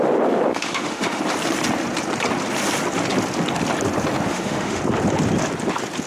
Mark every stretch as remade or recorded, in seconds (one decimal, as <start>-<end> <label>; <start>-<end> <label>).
0.0-0.5 recorded; 0.5-1.2 remade; 1.2-4.3 recorded; 4.3-4.8 remade; 4.8-6.1 recorded